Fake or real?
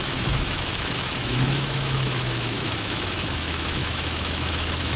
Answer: fake